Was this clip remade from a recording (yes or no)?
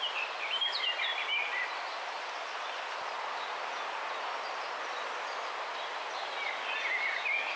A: no